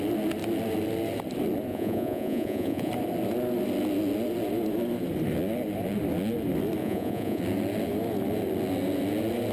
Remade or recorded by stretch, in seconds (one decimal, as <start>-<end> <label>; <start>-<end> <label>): 0.0-1.7 recorded; 1.7-2.9 remade; 2.9-6.8 recorded; 6.8-7.4 remade; 7.4-9.5 recorded